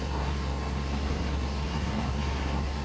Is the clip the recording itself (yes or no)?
no